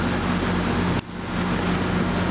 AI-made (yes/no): no